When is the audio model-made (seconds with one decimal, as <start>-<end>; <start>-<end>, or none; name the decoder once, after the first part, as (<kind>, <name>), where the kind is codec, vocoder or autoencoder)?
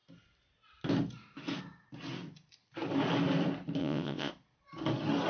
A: 3.8-4.3 (vocoder, WaveNeXt)